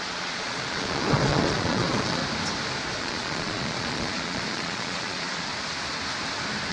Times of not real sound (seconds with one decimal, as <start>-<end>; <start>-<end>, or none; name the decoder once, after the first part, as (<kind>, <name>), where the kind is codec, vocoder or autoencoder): 0.0-2.2 (vocoder, Vocos); 3.0-5.5